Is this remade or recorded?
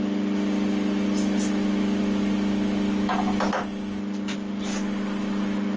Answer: recorded